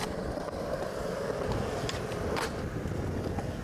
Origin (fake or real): real